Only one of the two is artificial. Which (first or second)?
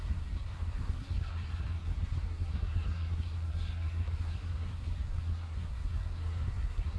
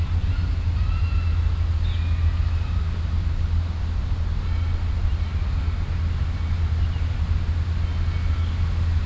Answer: first